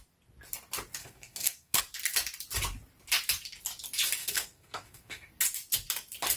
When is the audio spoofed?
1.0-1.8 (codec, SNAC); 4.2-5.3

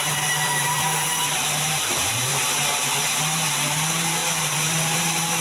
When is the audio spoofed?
0.0-2.3 (vocoder, BigVGAN v2); 3.0-5.4